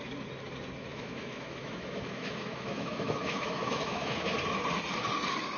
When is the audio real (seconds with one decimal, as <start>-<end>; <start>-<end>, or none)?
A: 0.0-0.9; 4.3-5.6